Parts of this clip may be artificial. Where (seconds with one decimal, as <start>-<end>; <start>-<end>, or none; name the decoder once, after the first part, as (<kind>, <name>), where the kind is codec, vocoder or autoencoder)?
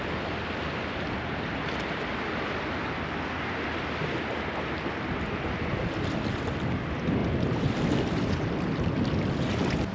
none